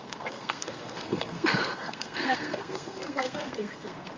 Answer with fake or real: fake